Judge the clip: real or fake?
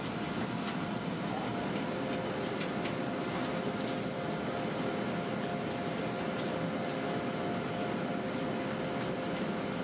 real